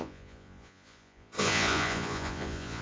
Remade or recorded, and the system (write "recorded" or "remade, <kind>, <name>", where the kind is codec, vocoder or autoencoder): remade, vocoder, Vocos